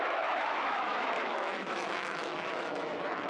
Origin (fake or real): fake